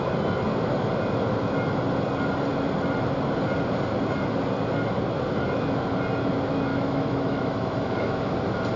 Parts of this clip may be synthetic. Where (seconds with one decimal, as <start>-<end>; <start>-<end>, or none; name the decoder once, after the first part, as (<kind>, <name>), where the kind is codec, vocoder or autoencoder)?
6.7-8.3 (autoencoder, DAC-VAE)